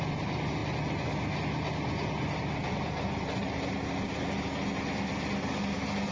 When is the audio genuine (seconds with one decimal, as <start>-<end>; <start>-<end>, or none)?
0.0-6.1